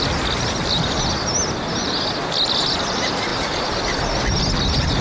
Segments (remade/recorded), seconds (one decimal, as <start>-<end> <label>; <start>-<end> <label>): 0.0-5.0 recorded